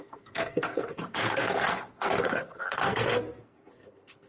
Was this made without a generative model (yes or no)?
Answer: no